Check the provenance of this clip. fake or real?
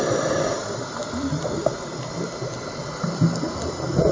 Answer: real